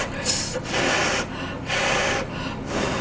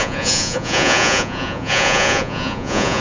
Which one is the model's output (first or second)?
second